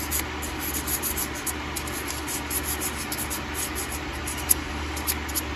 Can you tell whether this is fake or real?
real